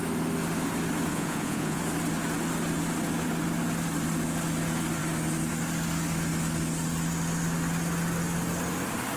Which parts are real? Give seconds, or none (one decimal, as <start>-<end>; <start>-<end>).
0.0-1.1; 1.8-9.2